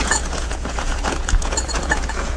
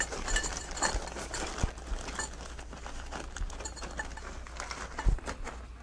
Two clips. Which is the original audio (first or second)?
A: second